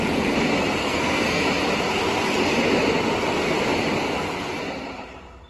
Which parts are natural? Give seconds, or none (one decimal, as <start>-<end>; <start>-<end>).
0.0-0.8; 1.4-5.5